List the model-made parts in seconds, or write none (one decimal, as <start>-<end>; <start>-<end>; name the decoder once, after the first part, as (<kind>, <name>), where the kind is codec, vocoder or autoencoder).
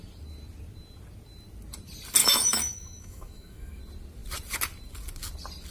2.2-3.8 (autoencoder, DAC-VAE)